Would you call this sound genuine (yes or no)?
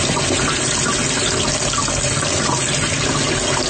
yes